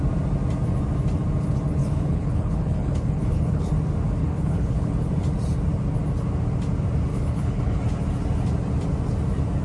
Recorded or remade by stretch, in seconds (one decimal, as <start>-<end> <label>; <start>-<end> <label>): 0.0-1.8 recorded; 1.8-3.7 remade; 3.7-4.2 recorded; 4.2-4.9 remade; 4.9-7.1 recorded; 7.1-7.8 remade; 7.8-9.6 recorded